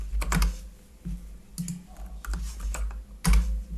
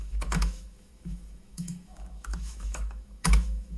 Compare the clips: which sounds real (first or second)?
first